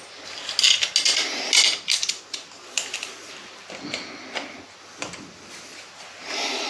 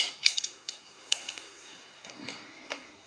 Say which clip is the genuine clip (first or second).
first